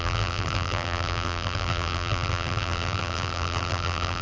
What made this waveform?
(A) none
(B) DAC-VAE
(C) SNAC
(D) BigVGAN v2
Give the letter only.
D